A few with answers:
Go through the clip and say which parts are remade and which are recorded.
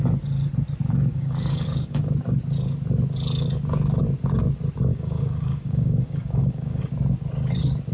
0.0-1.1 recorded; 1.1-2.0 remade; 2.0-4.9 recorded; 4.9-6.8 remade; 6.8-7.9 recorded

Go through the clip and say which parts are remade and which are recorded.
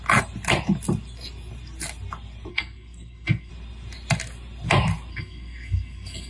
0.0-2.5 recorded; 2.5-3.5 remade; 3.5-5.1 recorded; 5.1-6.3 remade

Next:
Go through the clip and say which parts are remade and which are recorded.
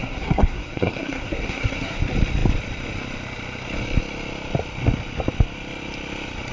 0.0-2.0 remade; 2.0-6.5 recorded